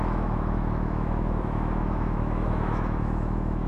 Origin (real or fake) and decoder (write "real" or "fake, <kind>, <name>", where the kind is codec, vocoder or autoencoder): fake, autoencoder, DAC-VAE